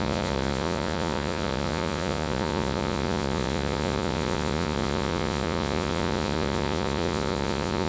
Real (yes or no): no